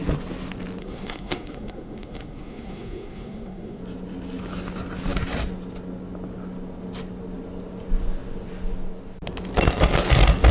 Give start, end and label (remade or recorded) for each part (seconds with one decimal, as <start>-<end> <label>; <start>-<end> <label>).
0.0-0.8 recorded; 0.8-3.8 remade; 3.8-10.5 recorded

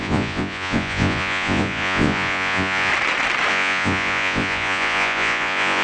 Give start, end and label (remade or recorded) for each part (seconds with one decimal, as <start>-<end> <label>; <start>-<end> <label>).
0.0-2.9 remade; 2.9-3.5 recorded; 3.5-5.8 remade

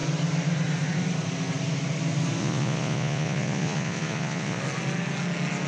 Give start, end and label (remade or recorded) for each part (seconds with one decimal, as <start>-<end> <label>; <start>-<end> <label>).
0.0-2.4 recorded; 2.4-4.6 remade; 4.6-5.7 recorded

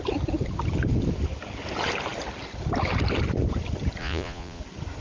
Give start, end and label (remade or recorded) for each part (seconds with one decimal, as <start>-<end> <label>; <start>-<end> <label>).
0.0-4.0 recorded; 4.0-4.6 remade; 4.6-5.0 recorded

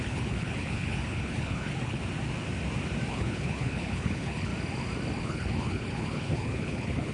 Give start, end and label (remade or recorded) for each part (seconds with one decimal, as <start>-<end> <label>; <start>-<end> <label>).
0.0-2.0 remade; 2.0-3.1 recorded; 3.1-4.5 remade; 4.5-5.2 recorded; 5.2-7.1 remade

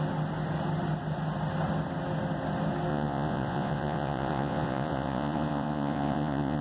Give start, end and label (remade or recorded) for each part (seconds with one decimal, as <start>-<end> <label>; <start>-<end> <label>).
0.0-2.9 recorded; 2.9-6.6 remade

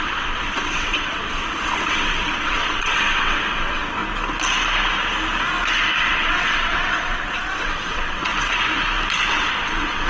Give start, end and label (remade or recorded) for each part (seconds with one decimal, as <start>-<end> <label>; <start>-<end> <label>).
0.0-4.0 remade; 4.0-6.0 recorded; 6.0-8.3 remade; 8.3-9.3 recorded; 9.3-10.1 remade

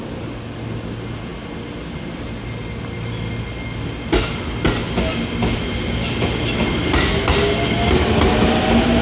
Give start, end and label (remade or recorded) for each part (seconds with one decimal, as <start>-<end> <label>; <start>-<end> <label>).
0.0-9.0 recorded